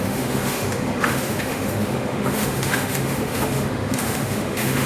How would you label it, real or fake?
fake